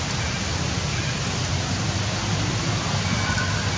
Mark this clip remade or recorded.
recorded